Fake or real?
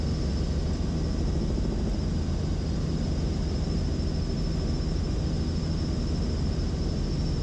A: real